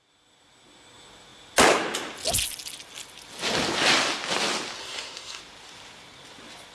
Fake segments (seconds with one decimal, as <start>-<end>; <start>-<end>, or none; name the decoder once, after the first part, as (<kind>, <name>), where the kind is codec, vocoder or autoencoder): 4.8-5.4 (codec, SNAC)